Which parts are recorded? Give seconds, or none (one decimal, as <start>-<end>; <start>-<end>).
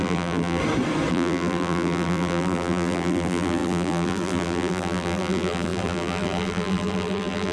0.6-1.1